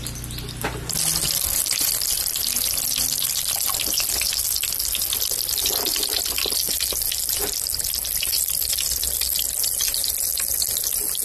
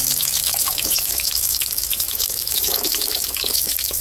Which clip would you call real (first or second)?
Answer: first